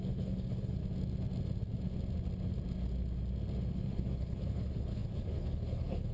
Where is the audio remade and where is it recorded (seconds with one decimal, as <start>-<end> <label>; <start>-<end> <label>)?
0.0-0.8 remade; 0.8-3.7 recorded; 3.7-6.1 remade